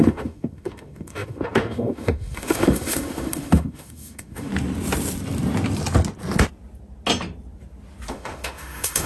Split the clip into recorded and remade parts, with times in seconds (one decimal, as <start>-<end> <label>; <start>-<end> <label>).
0.0-4.5 remade; 4.5-8.1 recorded; 8.1-9.1 remade